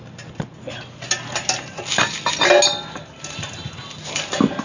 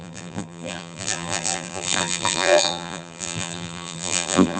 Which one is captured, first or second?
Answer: first